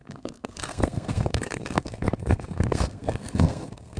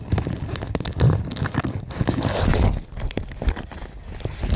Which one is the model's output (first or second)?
first